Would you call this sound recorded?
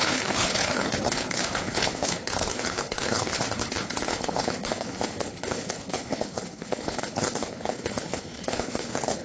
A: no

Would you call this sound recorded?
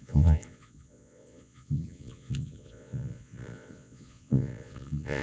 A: no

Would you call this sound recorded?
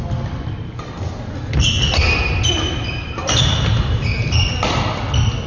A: yes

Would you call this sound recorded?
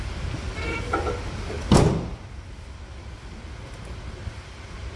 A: no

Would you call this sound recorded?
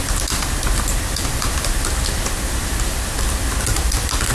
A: yes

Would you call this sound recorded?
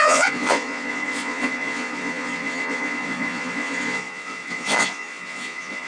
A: no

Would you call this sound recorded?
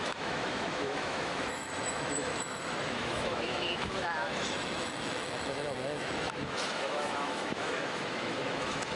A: no